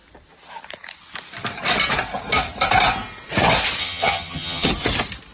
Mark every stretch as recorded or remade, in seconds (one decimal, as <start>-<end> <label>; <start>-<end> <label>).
0.0-3.8 recorded; 3.8-4.7 remade; 4.7-5.3 recorded